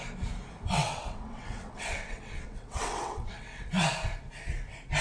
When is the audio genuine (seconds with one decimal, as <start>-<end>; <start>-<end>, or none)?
0.0-0.7; 3.7-5.0